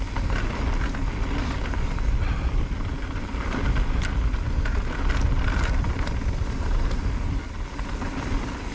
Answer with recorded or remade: recorded